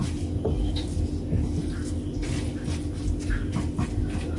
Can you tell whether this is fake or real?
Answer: real